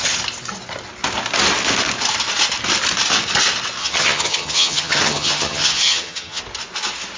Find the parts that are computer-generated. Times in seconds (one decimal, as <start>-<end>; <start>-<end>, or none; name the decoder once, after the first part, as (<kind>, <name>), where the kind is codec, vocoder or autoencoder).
3.8-6.4 (vocoder, HiFi-GAN)